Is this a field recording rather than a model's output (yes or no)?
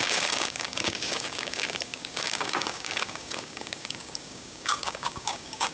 no